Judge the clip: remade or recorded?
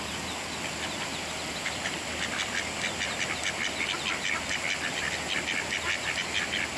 recorded